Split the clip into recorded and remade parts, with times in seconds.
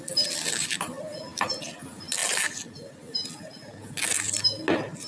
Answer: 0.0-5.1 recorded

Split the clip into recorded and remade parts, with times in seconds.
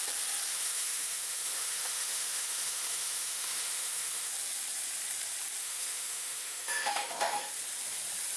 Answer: 0.0-0.5 recorded; 0.5-4.3 remade; 4.3-5.6 recorded; 5.6-7.5 remade; 7.5-8.4 recorded